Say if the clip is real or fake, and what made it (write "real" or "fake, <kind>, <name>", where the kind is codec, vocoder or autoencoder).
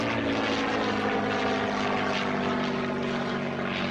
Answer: real